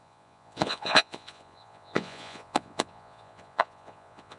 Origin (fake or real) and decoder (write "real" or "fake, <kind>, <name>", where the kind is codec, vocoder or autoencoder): fake, vocoder, Vocos